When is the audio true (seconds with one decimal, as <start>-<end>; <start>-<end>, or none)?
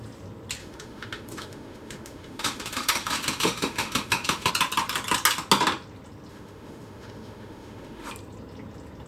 0.0-0.6; 4.5-6.3; 8.1-9.1